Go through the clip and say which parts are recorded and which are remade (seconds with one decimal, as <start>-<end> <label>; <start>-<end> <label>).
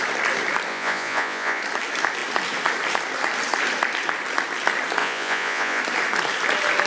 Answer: 0.0-0.7 recorded; 0.7-1.6 remade; 1.6-5.0 recorded; 5.0-5.8 remade; 5.8-6.9 recorded